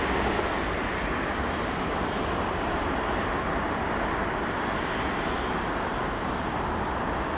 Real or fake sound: real